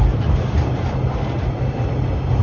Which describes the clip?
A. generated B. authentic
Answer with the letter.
B